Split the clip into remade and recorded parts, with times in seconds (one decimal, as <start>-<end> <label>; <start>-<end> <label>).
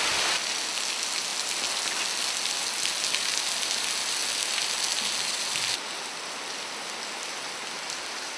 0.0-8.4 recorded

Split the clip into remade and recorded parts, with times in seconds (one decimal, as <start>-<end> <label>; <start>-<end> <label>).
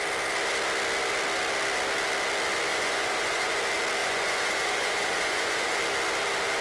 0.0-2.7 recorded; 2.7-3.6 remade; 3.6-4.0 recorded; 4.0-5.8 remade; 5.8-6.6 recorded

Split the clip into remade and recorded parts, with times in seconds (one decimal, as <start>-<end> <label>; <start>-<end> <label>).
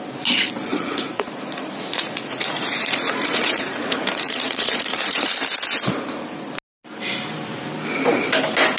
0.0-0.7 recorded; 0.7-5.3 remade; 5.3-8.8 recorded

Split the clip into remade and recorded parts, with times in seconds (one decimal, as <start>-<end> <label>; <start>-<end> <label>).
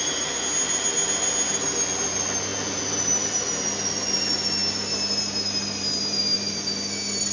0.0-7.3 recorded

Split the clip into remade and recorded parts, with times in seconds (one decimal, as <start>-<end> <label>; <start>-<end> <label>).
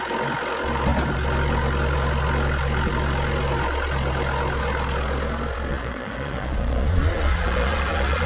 0.0-5.7 recorded; 5.7-8.3 remade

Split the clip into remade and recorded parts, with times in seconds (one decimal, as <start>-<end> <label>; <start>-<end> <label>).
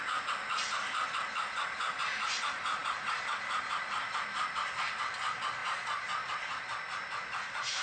0.0-5.6 recorded; 5.6-6.6 remade; 6.6-7.8 recorded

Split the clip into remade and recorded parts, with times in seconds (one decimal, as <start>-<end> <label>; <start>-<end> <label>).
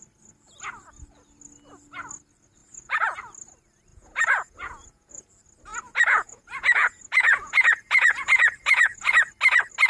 0.0-2.6 recorded; 2.6-3.2 remade; 3.2-3.9 recorded; 3.9-5.3 remade; 5.3-5.7 recorded; 5.7-9.1 remade; 9.1-9.9 recorded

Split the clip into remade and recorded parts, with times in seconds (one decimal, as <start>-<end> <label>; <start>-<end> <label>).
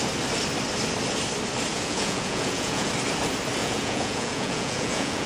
0.0-1.7 recorded; 1.7-2.9 remade; 2.9-3.6 recorded; 3.6-5.3 remade